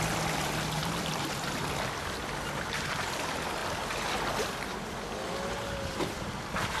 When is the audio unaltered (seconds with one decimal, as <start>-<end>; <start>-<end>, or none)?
0.0-6.8